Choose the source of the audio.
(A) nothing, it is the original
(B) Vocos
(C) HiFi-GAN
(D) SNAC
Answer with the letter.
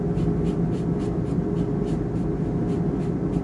A